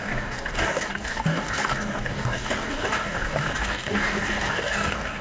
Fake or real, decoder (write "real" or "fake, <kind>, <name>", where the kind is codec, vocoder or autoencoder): fake, codec, DAC